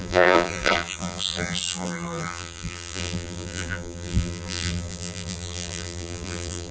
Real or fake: fake